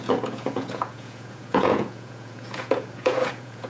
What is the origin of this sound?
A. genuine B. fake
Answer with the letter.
B